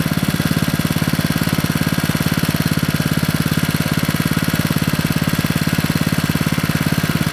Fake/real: real